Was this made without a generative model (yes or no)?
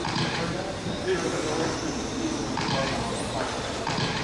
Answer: yes